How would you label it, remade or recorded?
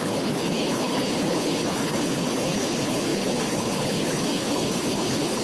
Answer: remade